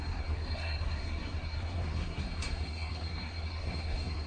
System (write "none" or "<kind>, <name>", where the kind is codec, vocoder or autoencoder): codec, SNAC